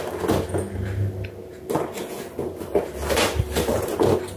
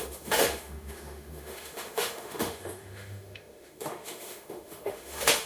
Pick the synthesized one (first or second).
second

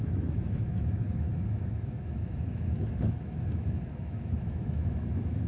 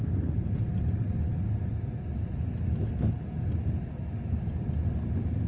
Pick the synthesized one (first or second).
first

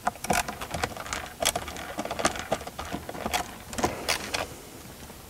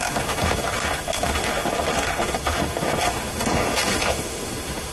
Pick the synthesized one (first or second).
second